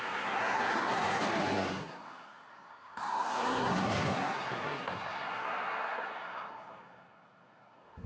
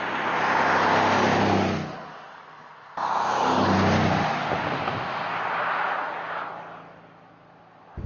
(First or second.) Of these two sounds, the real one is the second